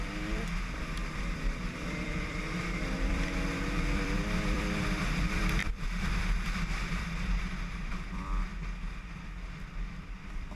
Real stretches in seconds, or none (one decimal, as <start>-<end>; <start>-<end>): 8.5-9.6